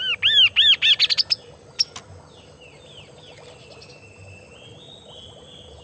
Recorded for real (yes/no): yes